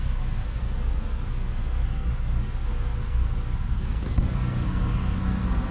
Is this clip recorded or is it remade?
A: remade